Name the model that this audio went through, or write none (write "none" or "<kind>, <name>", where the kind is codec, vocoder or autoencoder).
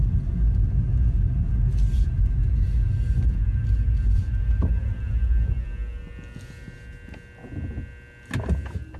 none